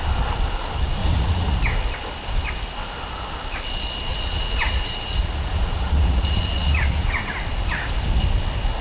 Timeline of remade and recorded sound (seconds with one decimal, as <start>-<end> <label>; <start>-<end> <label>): 0.0-1.0 recorded; 1.0-1.6 remade; 1.6-4.1 recorded; 4.1-7.2 remade; 7.2-8.8 recorded